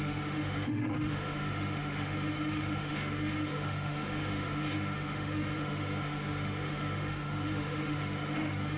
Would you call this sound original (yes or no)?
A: no